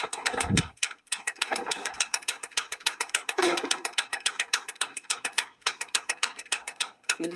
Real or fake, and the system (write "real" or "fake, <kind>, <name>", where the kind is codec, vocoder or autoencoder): fake, codec, SNAC